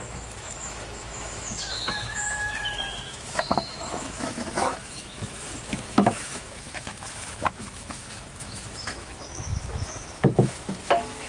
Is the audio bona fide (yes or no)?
no